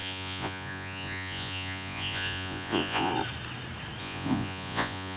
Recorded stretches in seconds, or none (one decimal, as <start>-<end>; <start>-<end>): 3.1-4.0